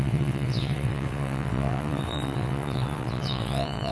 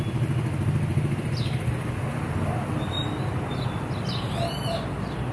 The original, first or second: second